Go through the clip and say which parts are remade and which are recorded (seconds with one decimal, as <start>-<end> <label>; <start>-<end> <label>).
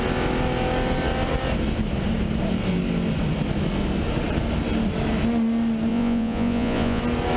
0.0-5.9 recorded; 5.9-7.0 remade; 7.0-7.4 recorded